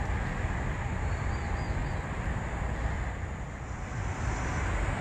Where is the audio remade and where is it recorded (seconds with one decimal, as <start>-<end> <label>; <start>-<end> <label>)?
0.0-1.8 remade; 1.8-5.0 recorded

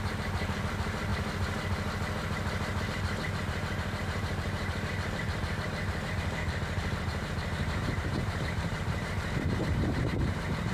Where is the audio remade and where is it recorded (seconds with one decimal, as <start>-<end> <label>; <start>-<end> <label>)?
0.0-1.1 remade; 1.1-2.8 recorded; 2.8-10.7 remade